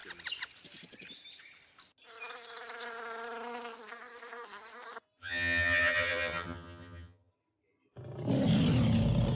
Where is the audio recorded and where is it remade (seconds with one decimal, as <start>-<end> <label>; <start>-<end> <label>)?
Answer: 0.0-5.2 recorded; 5.2-7.3 remade; 7.3-9.4 recorded